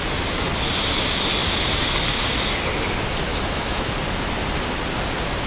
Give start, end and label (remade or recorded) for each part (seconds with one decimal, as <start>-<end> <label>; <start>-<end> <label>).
0.0-3.3 recorded; 3.3-3.9 remade; 3.9-5.5 recorded